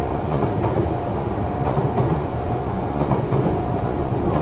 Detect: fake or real fake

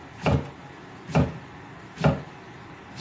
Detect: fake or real real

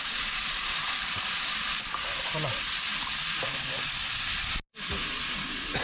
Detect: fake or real real